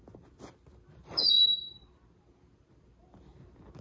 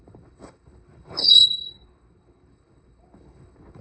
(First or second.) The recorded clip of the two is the first